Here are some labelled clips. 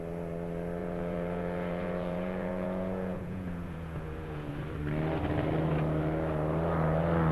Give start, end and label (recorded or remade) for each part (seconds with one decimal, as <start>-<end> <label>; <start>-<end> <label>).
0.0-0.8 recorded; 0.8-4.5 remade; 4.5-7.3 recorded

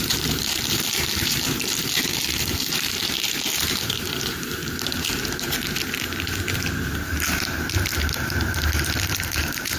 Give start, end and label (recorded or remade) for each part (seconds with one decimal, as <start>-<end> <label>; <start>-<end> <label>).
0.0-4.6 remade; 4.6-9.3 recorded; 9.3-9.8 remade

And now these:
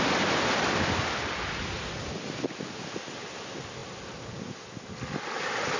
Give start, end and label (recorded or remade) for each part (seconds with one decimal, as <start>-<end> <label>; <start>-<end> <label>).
0.0-5.8 recorded

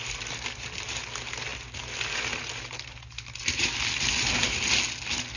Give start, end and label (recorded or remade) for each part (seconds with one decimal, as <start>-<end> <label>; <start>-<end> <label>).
0.0-5.4 recorded

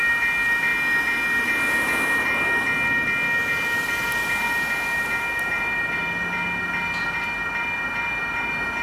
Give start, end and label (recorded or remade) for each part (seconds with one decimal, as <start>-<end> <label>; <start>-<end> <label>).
0.0-8.8 recorded

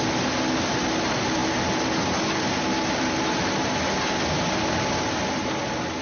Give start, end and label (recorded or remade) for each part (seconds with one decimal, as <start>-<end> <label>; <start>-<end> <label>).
0.0-6.0 recorded

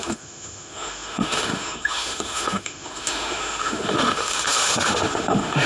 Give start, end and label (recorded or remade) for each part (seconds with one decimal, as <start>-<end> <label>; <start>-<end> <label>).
0.0-5.7 remade